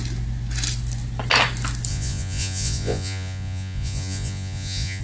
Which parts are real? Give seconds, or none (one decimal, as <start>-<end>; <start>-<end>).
0.0-1.9